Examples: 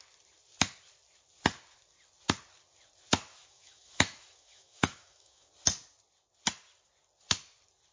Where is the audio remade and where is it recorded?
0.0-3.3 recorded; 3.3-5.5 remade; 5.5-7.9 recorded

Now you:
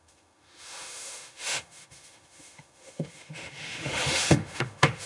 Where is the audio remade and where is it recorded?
0.0-5.1 remade

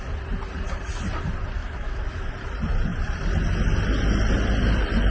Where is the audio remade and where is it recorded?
0.0-1.6 recorded; 1.6-2.3 remade; 2.3-5.1 recorded